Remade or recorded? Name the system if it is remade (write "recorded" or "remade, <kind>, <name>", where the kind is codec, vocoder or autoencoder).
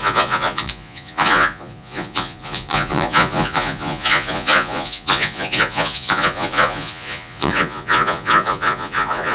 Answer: remade, vocoder, Vocos